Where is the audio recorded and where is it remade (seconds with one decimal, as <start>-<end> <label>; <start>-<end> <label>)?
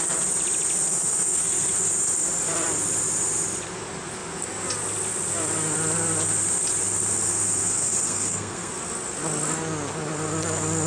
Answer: 0.0-0.9 recorded; 0.9-1.9 remade; 1.9-7.3 recorded; 7.3-8.7 remade; 8.7-10.9 recorded